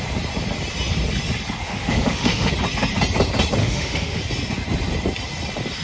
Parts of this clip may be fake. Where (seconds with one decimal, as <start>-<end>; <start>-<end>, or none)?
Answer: 1.6-2.5; 3.6-4.2